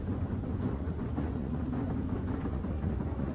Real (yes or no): no